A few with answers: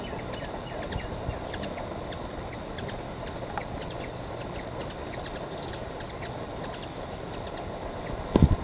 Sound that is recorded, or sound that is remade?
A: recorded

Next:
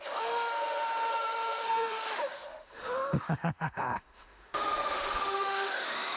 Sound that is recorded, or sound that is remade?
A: remade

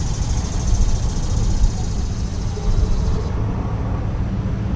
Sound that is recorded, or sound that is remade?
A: recorded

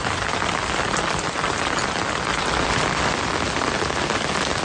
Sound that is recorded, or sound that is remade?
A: remade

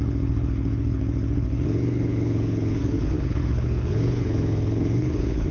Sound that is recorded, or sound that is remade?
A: remade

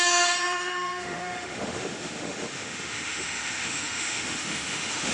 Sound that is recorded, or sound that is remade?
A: remade